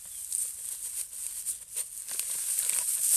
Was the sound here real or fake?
real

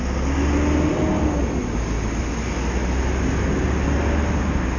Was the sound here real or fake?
real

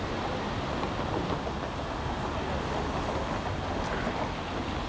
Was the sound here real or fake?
real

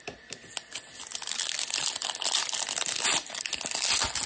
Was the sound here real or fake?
real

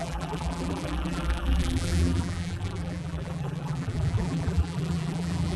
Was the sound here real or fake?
fake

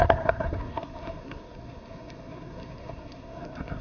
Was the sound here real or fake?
fake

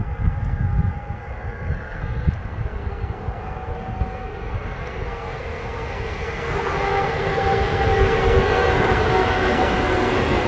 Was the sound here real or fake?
fake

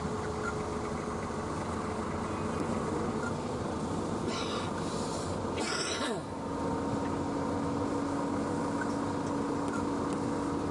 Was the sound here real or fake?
real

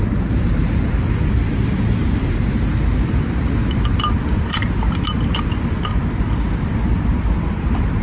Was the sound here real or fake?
real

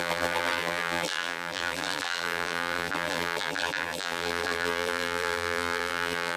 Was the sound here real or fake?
fake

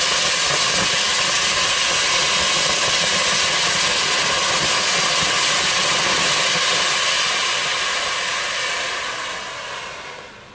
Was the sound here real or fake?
real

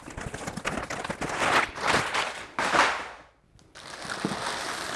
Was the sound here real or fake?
real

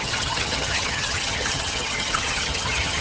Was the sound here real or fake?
fake